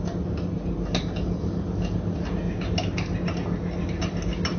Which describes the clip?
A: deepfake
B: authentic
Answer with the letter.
B